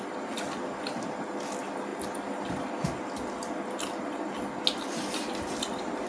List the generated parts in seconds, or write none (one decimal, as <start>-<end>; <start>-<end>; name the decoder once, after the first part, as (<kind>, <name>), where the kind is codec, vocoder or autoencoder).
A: none